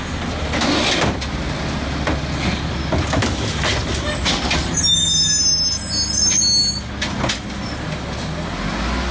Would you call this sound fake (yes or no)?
no